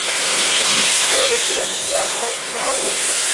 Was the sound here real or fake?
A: fake